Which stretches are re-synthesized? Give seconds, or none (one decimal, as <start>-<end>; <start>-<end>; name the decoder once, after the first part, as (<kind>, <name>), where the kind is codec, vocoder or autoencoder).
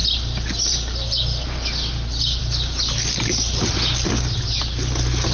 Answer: none